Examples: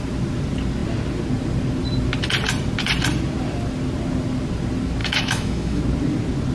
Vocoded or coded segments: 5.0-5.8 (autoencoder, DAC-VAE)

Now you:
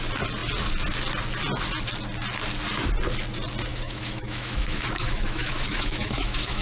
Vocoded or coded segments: 3.7-6.6 (autoencoder, DAC-VAE)

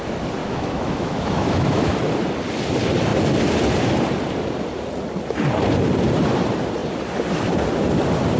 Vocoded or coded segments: 0.4-1.9 (autoencoder, DAC-VAE)

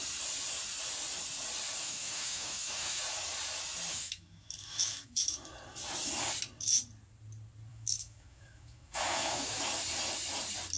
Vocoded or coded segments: 1.8-3.0 (autoencoder, DAC-VAE); 3.9-5.5; 7.7-9.6

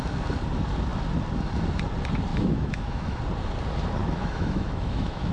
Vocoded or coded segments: 2.3-3.2 (autoencoder, DAC-VAE); 4.0-5.3

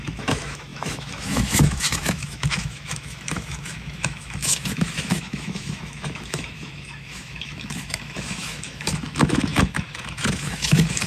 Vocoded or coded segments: 0.0-11.1 (autoencoder, DAC-VAE)

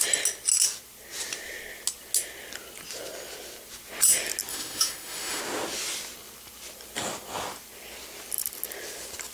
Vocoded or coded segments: 4.5-5.4 (autoencoder, DAC-VAE)

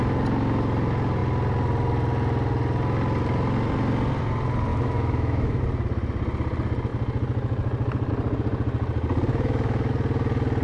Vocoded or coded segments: 4.7-5.6 (autoencoder, DAC-VAE); 9.3-9.9